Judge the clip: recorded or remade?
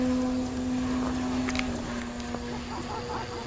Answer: recorded